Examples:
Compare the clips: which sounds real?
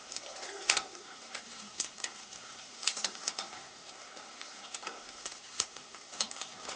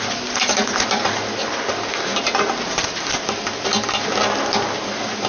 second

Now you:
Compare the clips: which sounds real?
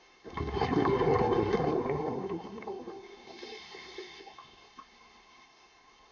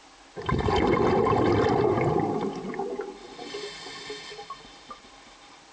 second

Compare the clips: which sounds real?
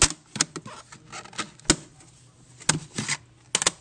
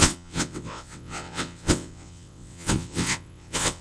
first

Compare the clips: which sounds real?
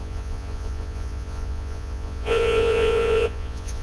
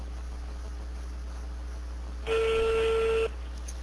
second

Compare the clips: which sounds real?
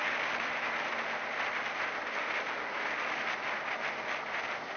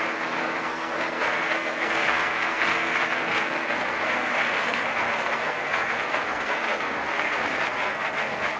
first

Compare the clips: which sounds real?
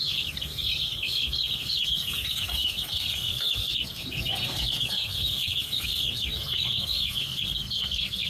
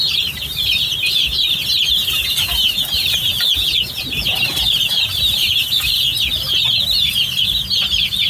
second